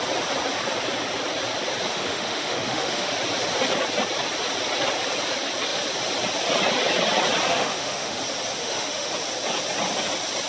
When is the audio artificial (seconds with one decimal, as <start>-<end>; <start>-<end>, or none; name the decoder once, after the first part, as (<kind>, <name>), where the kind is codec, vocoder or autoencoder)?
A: 1.9-3.1 (autoencoder, DAC-VAE); 7.5-8.2; 8.6-9.1

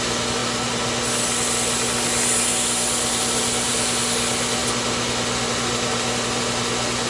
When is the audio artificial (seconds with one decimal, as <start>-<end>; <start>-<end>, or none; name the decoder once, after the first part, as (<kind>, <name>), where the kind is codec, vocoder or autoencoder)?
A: none